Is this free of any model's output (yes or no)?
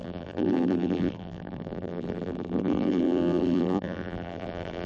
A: no